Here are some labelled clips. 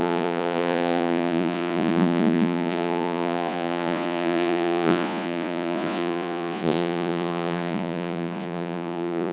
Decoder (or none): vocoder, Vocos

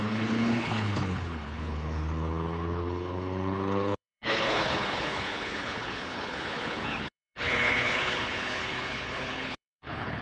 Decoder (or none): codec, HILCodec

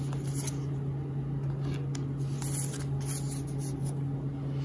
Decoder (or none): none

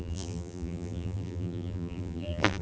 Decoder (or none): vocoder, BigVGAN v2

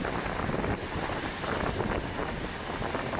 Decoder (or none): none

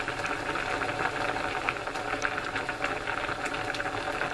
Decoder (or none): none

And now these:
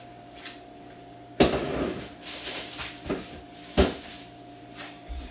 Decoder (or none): none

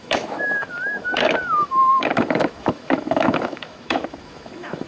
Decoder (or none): autoencoder, DAC-VAE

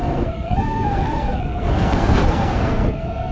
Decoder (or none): codec, SNAC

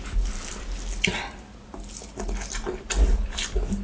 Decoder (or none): none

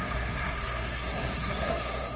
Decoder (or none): codec, SNAC